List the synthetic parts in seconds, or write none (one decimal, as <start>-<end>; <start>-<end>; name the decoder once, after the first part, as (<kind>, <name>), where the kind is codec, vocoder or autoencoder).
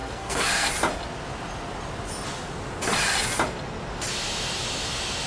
0.0-0.7 (codec, SNAC)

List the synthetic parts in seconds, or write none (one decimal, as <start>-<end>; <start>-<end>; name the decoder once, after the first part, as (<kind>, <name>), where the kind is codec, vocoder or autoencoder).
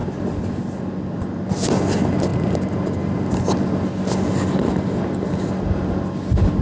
none